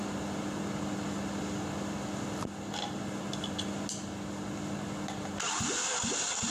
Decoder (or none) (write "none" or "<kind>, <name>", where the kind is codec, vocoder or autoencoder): none